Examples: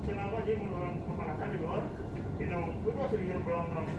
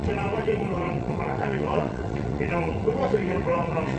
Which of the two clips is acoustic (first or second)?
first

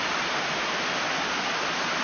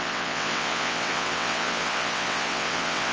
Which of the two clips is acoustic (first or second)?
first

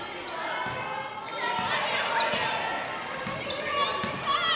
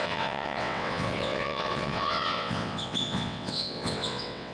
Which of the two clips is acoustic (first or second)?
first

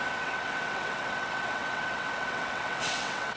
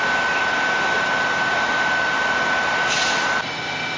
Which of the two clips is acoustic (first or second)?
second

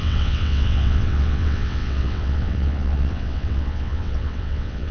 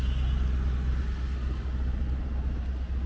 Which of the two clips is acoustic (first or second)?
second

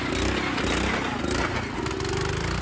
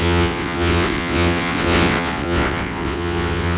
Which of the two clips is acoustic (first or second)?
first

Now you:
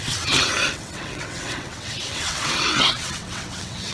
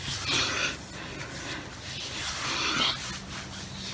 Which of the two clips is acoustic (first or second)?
second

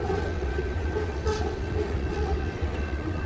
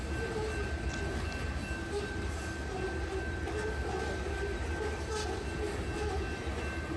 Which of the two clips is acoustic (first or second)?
second